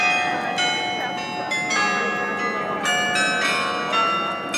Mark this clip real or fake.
real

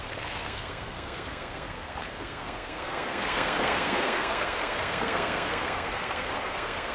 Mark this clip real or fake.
fake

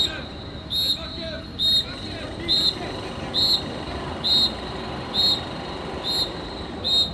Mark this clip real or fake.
real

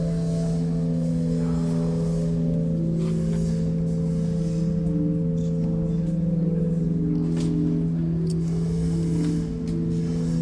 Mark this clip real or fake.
real